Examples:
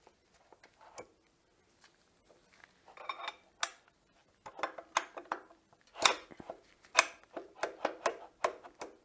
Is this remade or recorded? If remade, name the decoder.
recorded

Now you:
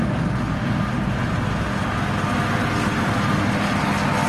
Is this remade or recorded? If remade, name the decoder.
recorded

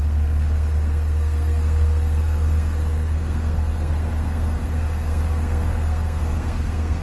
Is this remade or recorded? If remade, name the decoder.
remade, codec, SNAC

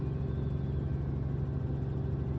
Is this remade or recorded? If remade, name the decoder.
recorded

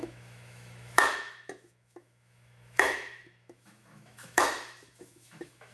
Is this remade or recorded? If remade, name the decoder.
remade, autoencoder, DAC-VAE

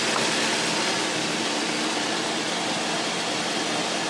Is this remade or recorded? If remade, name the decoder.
recorded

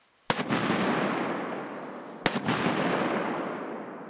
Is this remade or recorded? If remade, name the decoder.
recorded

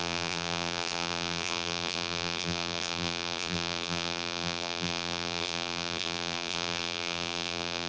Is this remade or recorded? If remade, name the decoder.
remade, vocoder, BigVGAN v2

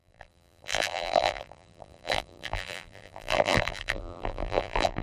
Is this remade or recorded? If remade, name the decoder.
remade, vocoder, BigVGAN v2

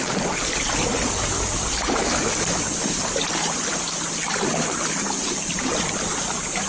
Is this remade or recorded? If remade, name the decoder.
recorded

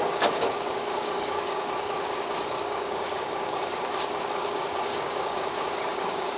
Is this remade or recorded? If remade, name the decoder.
remade, codec, DAC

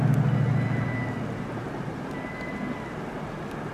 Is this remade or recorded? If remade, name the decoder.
recorded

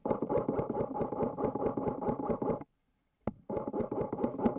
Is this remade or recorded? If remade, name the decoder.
recorded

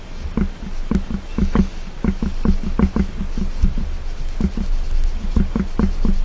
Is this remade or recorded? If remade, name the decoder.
recorded